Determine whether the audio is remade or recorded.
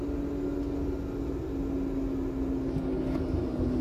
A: recorded